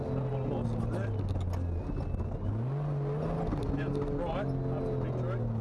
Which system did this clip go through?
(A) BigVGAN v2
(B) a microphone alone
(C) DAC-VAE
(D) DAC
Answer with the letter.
B